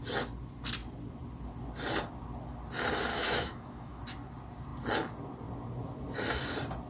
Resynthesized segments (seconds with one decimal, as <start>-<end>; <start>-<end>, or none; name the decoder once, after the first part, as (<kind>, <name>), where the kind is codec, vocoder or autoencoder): 3.1-4.0 (autoencoder, DAC-VAE)